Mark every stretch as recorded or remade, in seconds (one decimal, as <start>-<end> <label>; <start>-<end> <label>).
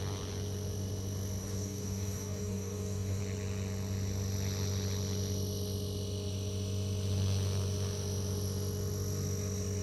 0.0-1.4 recorded; 1.4-3.2 remade; 3.2-9.8 recorded